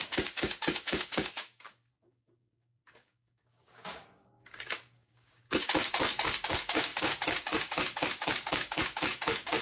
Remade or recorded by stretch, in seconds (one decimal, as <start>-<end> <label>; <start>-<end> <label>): 0.0-9.6 remade